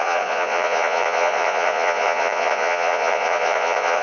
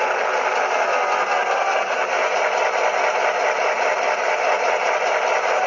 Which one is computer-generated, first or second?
first